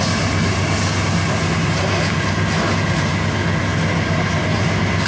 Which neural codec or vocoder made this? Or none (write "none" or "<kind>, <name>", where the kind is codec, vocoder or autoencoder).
none